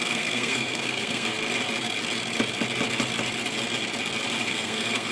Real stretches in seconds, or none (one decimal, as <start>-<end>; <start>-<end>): 1.3-4.4